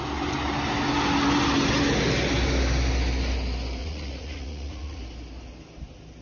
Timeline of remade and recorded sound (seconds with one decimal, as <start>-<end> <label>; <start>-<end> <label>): 0.0-3.8 recorded; 3.8-5.0 remade; 5.0-6.2 recorded